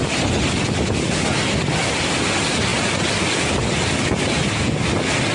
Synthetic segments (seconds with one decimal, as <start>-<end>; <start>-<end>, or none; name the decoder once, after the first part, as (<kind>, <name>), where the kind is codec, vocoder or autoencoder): none